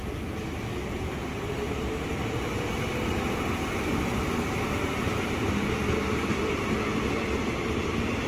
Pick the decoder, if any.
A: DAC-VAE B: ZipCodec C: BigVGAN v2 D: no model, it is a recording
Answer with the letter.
D